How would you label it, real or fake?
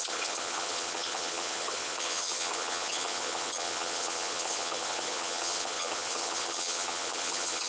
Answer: fake